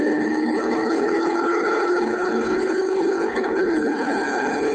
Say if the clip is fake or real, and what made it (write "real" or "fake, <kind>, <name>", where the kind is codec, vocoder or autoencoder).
fake, codec, HILCodec